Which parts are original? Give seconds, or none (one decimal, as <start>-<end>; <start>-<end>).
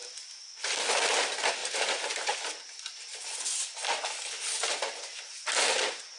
0.0-6.2